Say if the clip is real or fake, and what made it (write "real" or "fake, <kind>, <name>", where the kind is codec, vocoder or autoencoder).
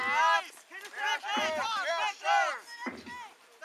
real